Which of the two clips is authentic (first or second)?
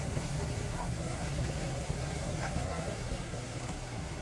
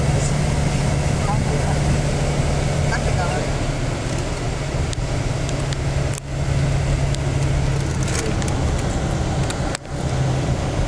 second